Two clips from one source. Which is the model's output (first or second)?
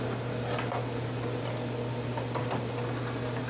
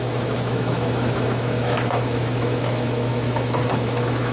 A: second